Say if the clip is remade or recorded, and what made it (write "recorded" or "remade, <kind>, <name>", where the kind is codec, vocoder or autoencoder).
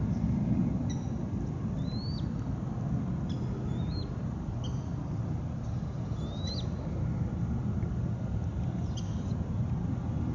recorded